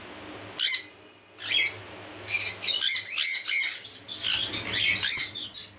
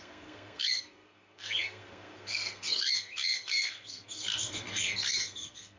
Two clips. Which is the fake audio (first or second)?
second